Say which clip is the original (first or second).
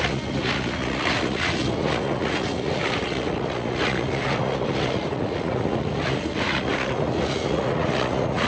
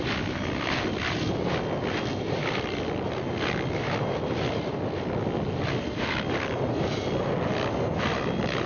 second